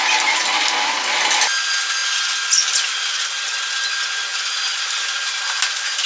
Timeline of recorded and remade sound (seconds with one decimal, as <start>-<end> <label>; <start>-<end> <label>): 0.0-6.1 recorded